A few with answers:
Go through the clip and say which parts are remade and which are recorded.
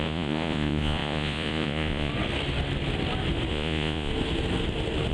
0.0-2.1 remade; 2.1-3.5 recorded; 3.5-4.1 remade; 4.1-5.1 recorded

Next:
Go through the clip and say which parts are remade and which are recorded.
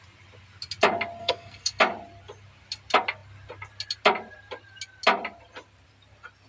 0.0-1.2 recorded; 1.2-1.8 remade; 1.8-6.5 recorded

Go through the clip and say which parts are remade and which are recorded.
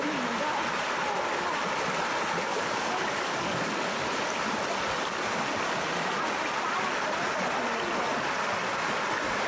0.0-2.5 recorded; 2.5-4.0 remade; 4.0-9.5 recorded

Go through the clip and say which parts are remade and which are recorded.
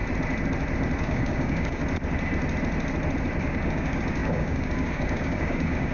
0.0-1.0 recorded; 1.0-1.8 remade; 1.8-3.4 recorded; 3.4-5.9 remade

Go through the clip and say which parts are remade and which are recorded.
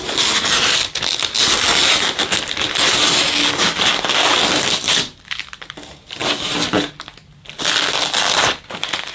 0.0-9.1 recorded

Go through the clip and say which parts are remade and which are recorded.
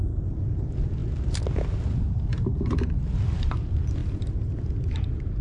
0.0-1.0 remade; 1.0-1.8 recorded; 1.8-5.4 remade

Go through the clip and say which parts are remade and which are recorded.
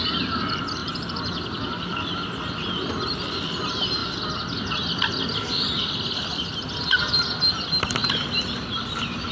0.0-9.3 recorded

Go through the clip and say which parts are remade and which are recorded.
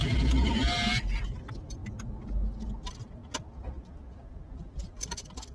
0.0-5.5 recorded